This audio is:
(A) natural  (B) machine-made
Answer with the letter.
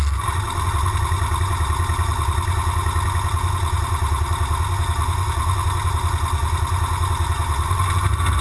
A